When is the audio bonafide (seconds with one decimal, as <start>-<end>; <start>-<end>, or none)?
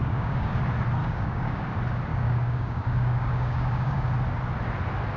0.6-1.0; 1.7-2.1; 4.1-5.2